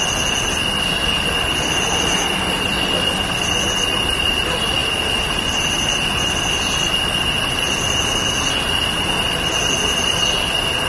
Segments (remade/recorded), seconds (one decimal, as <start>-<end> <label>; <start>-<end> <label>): 0.0-10.9 recorded